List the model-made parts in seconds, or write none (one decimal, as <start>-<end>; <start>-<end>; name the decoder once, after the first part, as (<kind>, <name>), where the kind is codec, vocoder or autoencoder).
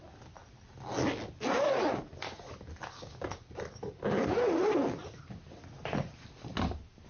none